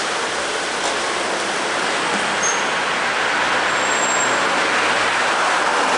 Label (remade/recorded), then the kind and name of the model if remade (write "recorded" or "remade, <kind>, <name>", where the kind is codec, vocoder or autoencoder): recorded